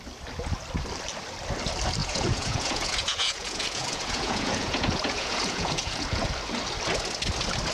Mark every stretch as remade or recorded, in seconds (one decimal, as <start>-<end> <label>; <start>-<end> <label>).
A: 0.0-2.0 recorded; 2.0-6.3 remade; 6.3-7.7 recorded